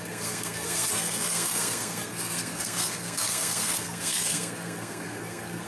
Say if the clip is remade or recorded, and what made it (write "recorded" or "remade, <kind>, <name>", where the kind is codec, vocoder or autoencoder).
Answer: remade, codec, SNAC